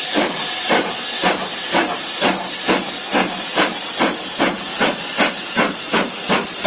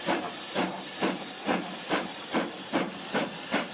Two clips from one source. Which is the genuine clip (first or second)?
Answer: first